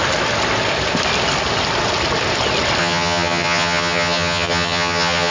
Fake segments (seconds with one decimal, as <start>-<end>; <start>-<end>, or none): 2.8-5.3